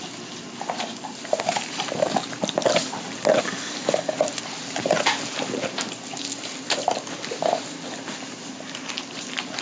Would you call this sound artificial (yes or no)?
no